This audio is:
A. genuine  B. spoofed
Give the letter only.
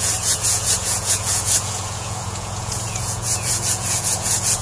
B